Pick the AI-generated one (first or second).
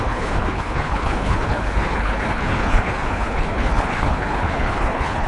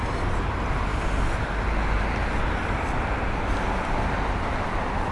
first